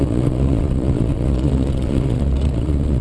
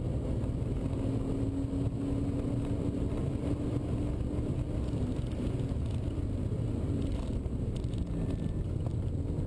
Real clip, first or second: second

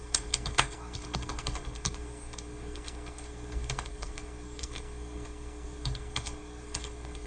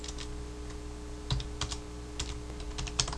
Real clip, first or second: second